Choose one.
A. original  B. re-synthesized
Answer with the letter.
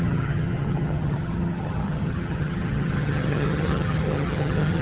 B